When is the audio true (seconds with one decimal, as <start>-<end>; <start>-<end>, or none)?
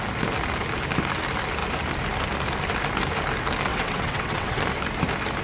0.0-3.7; 4.6-5.4